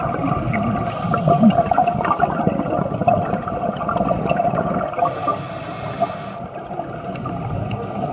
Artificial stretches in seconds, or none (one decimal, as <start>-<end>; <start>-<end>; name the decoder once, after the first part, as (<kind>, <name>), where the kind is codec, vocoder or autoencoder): none

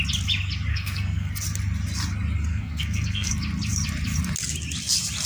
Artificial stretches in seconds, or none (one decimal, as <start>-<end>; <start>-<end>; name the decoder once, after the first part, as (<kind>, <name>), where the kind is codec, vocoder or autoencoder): 0.7-1.3 (codec, SNAC); 2.5-3.3

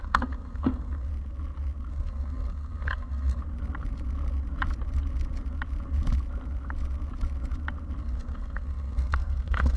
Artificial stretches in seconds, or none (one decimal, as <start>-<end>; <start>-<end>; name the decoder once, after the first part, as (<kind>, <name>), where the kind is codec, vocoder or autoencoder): 0.0-1.1 (codec, SNAC); 1.9-3.4; 8.0-9.8